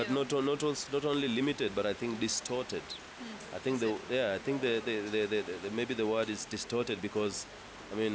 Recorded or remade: recorded